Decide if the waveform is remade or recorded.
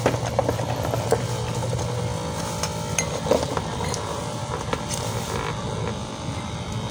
recorded